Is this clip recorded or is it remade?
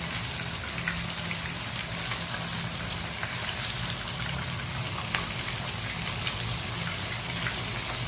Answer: recorded